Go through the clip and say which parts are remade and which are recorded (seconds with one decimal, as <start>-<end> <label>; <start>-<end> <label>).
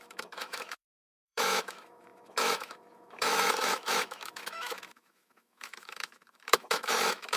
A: 0.0-7.4 remade